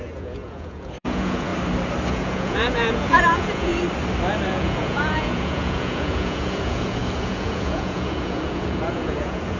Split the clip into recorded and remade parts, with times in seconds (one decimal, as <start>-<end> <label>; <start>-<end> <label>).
0.0-1.5 remade; 1.5-2.1 recorded; 2.1-3.7 remade; 3.7-4.5 recorded; 4.5-9.6 remade